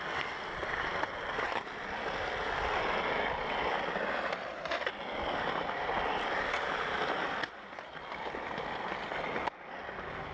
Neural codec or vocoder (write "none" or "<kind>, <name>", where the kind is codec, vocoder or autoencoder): none